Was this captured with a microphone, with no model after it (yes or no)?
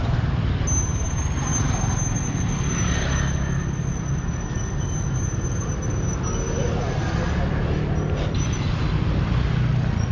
yes